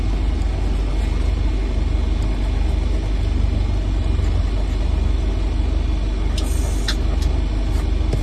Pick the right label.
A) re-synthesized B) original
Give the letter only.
B